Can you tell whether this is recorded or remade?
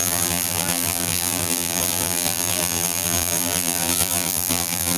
remade